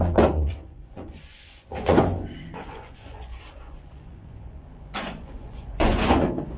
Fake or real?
fake